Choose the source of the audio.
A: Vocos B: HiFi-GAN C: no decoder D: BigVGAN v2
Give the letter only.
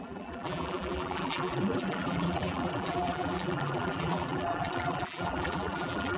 D